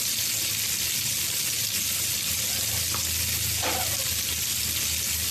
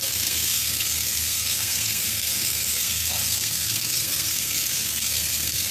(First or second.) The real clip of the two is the first